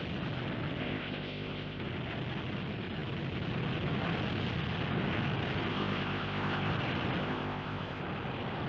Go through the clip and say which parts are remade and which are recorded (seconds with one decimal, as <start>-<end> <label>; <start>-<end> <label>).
0.0-0.8 recorded; 0.8-1.8 remade; 1.8-5.7 recorded; 5.7-6.7 remade; 6.7-7.2 recorded; 7.2-8.0 remade; 8.0-8.7 recorded